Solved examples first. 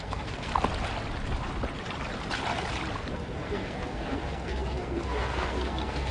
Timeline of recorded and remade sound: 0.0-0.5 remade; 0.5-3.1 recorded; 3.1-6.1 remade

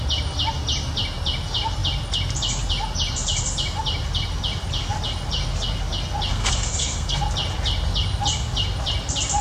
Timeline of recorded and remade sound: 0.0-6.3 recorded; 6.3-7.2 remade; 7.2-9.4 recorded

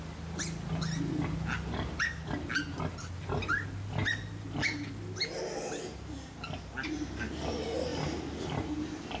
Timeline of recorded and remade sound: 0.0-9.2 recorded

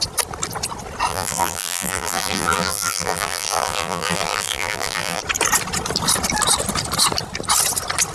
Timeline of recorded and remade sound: 0.0-1.1 recorded; 1.1-5.2 remade; 5.2-8.1 recorded